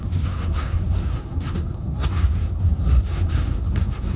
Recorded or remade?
remade